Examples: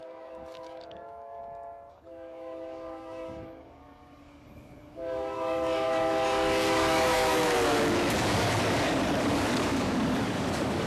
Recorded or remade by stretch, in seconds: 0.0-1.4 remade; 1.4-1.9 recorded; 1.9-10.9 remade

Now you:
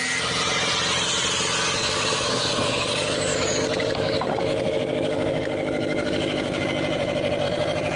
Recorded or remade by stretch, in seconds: 0.0-1.8 recorded; 1.8-6.6 remade; 6.6-8.0 recorded